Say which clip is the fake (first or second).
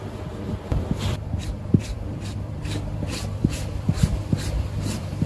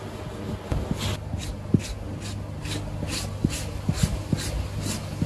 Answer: first